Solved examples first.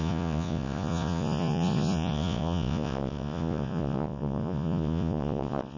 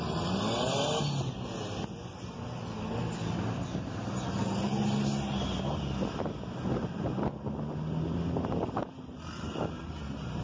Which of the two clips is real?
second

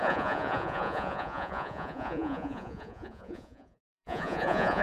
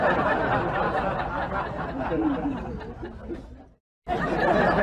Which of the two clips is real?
second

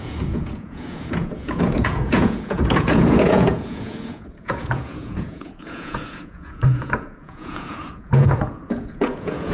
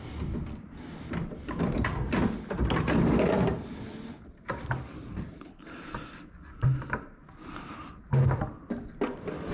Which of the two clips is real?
second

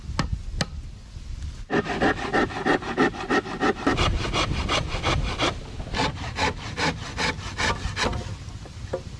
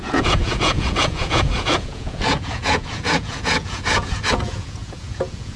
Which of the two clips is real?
first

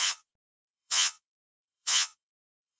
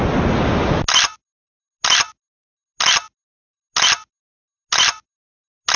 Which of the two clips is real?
second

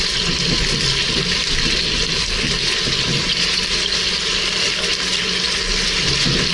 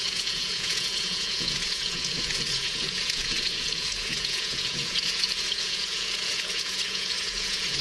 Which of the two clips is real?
first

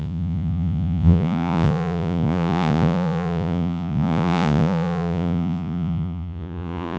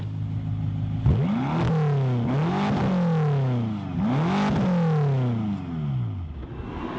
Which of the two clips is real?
second